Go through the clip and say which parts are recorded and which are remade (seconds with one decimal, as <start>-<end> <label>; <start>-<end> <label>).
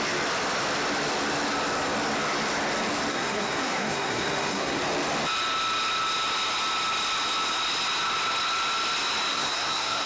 0.0-3.1 recorded; 3.1-4.8 remade; 4.8-9.3 recorded; 9.3-10.1 remade